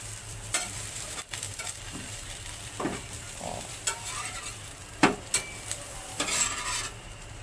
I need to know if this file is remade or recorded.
remade